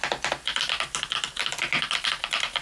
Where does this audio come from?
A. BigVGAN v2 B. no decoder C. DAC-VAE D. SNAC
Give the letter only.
B